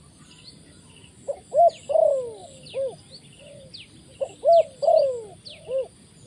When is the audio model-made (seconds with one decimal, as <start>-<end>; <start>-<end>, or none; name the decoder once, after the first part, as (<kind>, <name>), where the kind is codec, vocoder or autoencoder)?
none